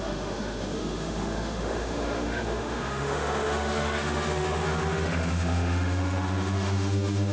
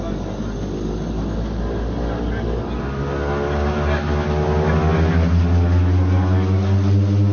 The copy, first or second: first